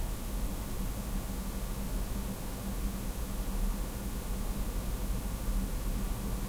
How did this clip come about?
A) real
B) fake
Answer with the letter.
A